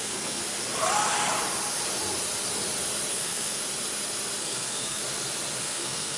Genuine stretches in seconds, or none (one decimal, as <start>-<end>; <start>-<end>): 0.4-3.1; 3.6-4.4; 5.0-5.6